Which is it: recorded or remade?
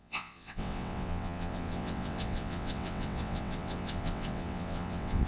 remade